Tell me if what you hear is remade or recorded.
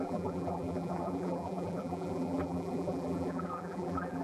remade